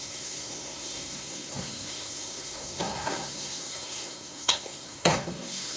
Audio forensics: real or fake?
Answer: fake